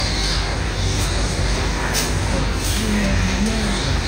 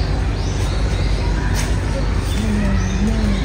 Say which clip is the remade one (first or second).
first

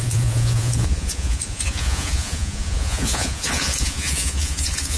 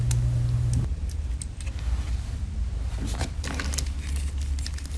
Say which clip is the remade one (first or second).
first